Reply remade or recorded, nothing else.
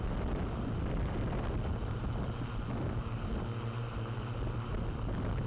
recorded